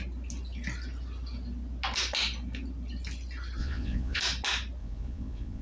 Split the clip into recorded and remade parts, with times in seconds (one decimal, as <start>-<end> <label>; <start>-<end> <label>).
0.0-3.6 recorded; 3.6-4.2 remade; 4.2-4.8 recorded; 4.8-5.6 remade